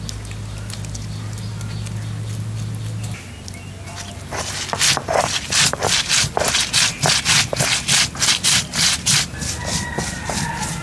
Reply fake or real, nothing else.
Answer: real